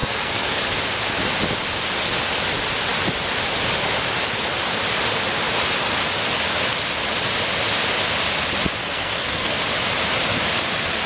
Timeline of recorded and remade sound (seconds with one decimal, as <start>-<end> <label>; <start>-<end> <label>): 0.0-0.6 remade; 0.6-8.8 recorded; 8.8-9.6 remade; 9.6-11.1 recorded